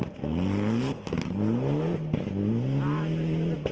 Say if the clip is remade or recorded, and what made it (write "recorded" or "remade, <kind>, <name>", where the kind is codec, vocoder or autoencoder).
recorded